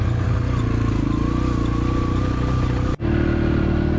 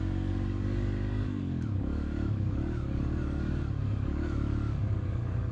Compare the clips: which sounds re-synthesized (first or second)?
second